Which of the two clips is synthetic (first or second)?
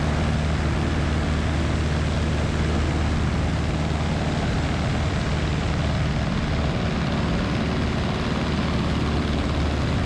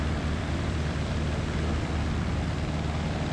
second